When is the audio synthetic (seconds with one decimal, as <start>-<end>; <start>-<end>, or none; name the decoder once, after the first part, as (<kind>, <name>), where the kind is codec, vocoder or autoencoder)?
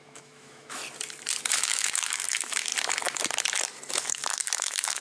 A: 0.0-0.8 (autoencoder, DAC-VAE); 1.5-2.7; 3.9-5.0